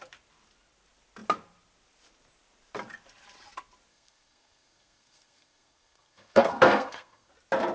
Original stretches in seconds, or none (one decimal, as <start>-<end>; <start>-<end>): 0.0-3.9; 7.3-7.7